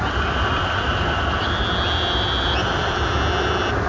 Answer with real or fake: real